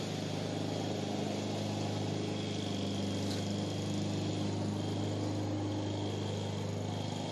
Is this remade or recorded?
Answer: recorded